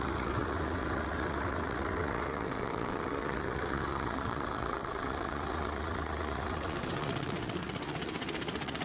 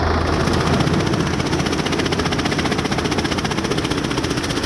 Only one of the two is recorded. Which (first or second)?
second